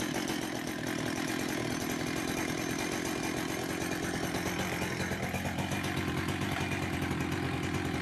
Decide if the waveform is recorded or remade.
recorded